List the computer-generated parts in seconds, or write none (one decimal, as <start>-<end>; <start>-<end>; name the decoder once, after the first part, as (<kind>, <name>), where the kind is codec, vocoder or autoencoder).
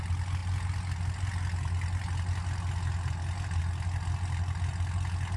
none